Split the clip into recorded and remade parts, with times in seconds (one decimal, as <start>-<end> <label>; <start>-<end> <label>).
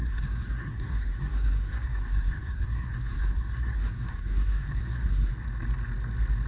0.0-5.3 remade; 5.3-6.5 recorded